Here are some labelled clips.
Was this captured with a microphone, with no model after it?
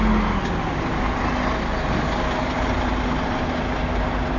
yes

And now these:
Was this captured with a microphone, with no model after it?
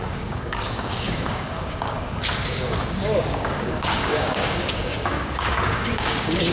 no